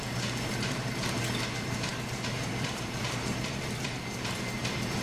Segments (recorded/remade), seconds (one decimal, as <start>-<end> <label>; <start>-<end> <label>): 0.0-1.9 recorded; 1.9-3.2 remade; 3.2-5.0 recorded

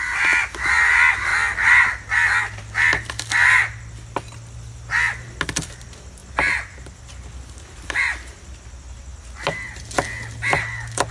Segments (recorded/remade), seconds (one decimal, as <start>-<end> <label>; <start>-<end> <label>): 0.0-11.1 recorded

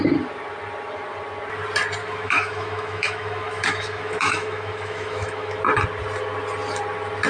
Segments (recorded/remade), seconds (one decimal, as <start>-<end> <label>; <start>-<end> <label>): 0.0-2.0 recorded; 2.0-5.6 remade; 5.6-7.3 recorded

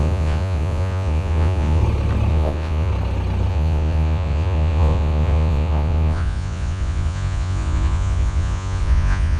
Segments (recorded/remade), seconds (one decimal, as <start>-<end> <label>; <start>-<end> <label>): 0.0-1.8 remade; 1.8-2.3 recorded; 2.3-2.9 remade; 2.9-3.5 recorded; 3.5-9.4 remade

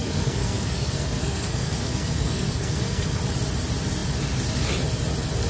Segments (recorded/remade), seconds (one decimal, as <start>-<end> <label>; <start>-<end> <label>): 0.0-3.2 remade; 3.2-5.5 recorded

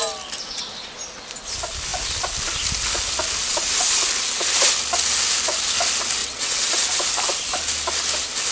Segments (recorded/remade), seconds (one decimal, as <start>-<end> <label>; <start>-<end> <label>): 0.0-6.2 recorded; 6.2-6.9 remade; 6.9-8.5 recorded